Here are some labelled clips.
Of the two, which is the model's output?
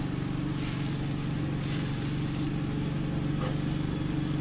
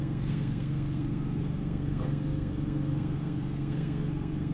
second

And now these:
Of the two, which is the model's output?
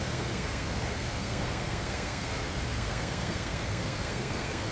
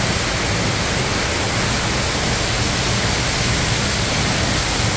first